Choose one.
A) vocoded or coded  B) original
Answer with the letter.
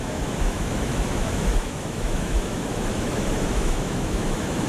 A